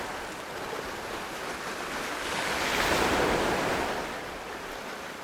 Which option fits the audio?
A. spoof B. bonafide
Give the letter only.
B